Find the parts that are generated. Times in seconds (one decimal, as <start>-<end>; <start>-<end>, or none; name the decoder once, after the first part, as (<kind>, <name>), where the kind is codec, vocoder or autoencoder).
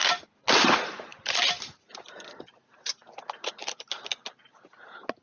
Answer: none